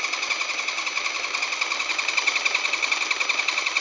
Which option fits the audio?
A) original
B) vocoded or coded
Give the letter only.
A